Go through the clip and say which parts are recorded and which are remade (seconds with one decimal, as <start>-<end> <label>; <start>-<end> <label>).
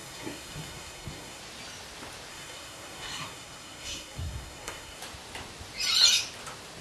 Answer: 0.0-1.4 remade; 1.4-2.3 recorded; 2.3-5.0 remade; 5.0-6.8 recorded